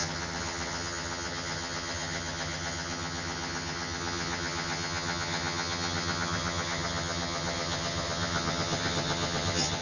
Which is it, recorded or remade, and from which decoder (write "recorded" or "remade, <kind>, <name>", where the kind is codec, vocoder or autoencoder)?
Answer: remade, vocoder, HiFi-GAN